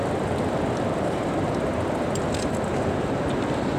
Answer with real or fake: fake